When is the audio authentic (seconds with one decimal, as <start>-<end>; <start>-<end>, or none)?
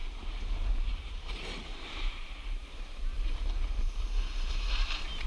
none